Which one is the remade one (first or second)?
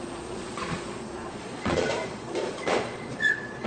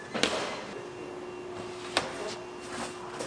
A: first